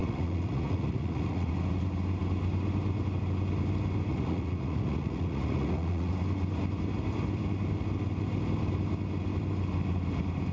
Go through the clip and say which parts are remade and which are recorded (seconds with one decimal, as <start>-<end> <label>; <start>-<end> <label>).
0.0-1.5 remade; 1.5-4.1 recorded; 4.1-6.1 remade; 6.1-10.5 recorded